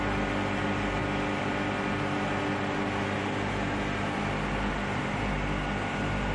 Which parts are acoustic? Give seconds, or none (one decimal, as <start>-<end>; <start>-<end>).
0.0-6.3